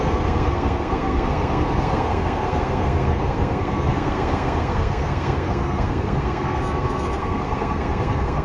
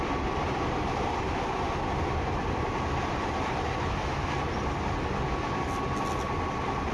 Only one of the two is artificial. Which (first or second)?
first